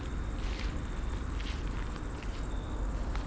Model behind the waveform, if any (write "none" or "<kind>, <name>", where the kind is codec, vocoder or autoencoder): none